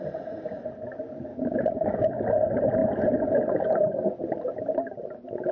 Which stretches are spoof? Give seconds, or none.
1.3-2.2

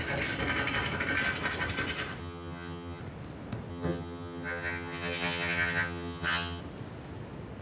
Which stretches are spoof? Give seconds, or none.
2.2-3.0; 3.7-6.6

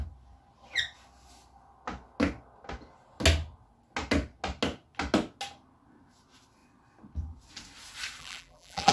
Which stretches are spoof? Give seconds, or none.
8.2-8.9

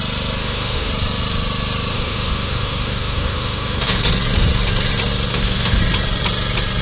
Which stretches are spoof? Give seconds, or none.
0.4-0.9; 1.9-4.0; 5.3-5.8